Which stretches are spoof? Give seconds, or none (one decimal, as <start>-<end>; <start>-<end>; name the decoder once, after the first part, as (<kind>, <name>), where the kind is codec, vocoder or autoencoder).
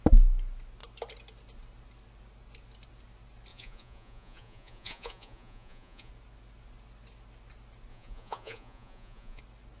3.5-6.1 (vocoder, Vocos); 7.9-9.4